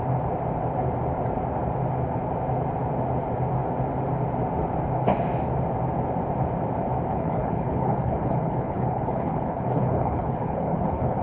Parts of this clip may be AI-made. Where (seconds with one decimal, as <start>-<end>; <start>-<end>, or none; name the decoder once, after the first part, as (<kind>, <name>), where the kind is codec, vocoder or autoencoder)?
7.1-11.2 (codec, HILCodec)